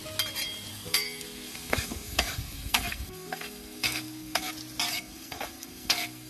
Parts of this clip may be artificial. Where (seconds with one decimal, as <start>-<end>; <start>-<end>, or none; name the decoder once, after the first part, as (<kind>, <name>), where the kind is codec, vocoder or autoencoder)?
0.7-4.5 (codec, SNAC); 4.9-6.3